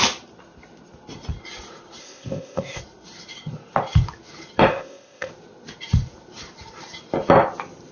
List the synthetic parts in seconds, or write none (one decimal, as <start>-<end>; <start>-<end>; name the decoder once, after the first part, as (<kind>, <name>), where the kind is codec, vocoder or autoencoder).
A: 2.0-2.8 (codec, ZipCodec); 4.7-5.3